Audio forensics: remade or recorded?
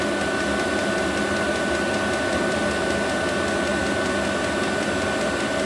recorded